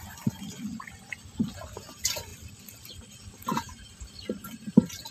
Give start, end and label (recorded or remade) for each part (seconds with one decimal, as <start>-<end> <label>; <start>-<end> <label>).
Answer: 0.0-5.1 recorded